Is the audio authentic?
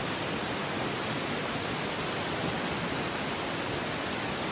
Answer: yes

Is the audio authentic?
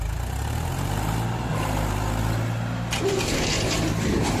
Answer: yes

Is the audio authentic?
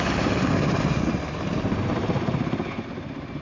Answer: yes